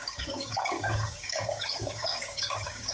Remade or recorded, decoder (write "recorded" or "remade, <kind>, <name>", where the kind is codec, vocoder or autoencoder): remade, codec, DAC